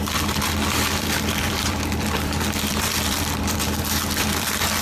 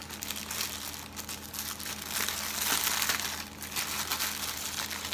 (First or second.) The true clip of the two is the second